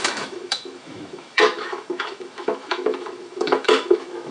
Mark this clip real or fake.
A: fake